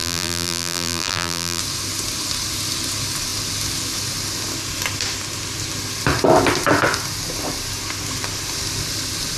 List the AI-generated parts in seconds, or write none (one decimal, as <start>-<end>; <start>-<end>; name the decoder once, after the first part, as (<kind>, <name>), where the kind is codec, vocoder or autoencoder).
0.0-1.6 (vocoder, BigVGAN v2)